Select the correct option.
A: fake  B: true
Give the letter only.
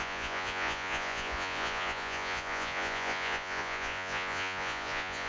A